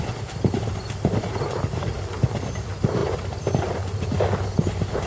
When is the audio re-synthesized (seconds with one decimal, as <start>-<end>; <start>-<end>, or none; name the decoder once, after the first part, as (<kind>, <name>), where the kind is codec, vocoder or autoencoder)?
none